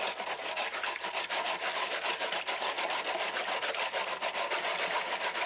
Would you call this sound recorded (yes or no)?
yes